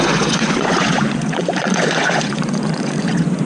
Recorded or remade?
remade